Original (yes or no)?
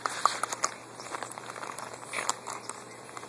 yes